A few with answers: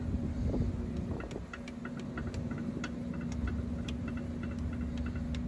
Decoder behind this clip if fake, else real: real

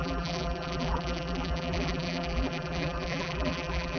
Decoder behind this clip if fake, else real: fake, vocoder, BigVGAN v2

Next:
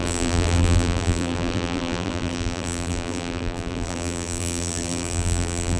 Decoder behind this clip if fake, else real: fake, vocoder, BigVGAN v2